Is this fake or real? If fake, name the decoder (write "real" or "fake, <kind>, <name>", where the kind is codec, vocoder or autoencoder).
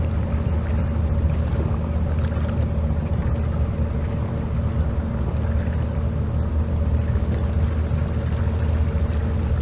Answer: real